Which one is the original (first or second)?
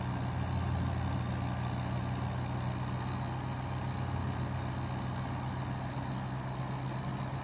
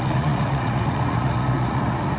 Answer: first